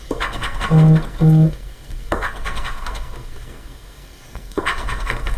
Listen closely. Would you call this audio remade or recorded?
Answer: remade